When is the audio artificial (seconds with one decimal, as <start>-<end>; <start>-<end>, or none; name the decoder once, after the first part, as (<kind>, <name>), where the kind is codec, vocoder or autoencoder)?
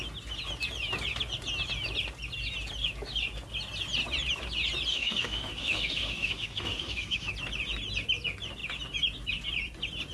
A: 4.9-7.3 (autoencoder, DAC-VAE)